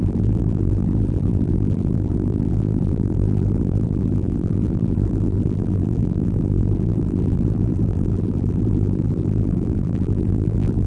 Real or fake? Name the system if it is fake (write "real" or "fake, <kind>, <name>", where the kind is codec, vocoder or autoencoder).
fake, vocoder, BigVGAN v2